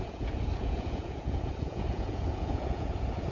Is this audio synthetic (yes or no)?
yes